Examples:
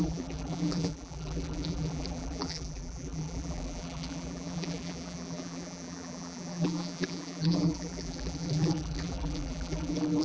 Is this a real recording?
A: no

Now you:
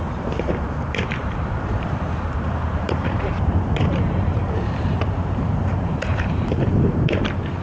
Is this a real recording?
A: no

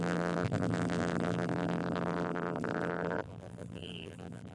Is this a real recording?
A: no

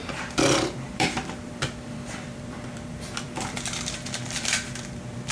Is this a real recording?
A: no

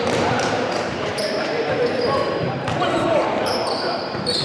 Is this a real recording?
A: no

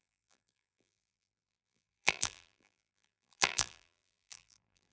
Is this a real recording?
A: no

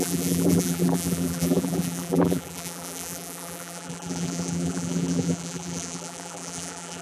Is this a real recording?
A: no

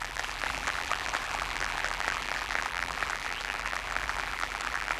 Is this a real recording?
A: no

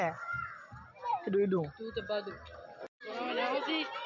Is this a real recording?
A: yes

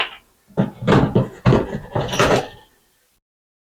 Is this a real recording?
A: yes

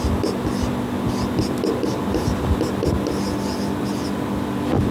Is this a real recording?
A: yes